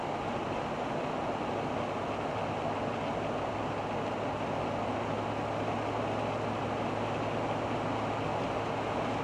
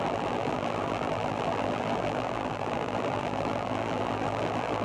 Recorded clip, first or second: first